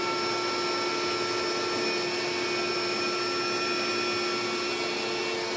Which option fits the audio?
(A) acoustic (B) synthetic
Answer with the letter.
A